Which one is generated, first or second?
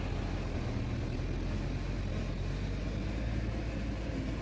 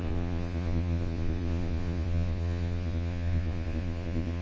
second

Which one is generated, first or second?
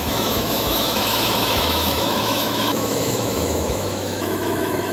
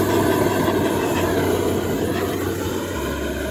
first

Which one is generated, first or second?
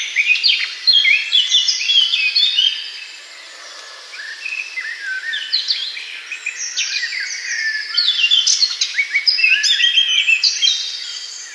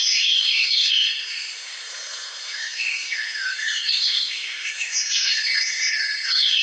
second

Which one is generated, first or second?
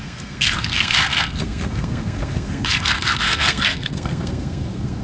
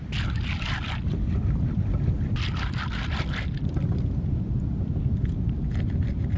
first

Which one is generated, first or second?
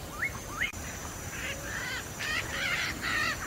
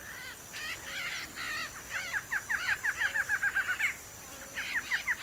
first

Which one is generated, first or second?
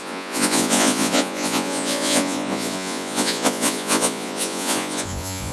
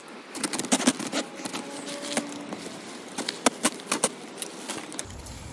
first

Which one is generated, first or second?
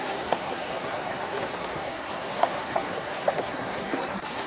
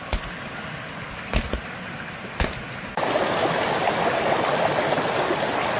first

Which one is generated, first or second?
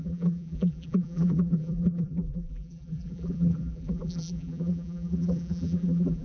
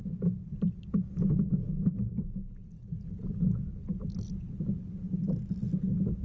first